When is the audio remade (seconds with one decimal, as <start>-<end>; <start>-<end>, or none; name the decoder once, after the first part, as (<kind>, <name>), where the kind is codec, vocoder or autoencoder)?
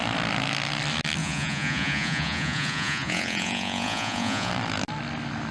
1.2-4.5 (vocoder, Vocos)